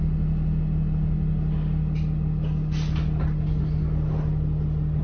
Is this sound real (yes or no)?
yes